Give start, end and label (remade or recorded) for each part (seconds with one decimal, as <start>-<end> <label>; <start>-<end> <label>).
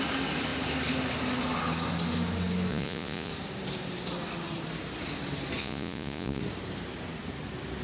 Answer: 0.0-2.7 recorded; 2.7-3.3 remade; 3.3-5.6 recorded; 5.6-6.4 remade; 6.4-7.8 recorded